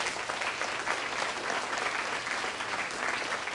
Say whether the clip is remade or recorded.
recorded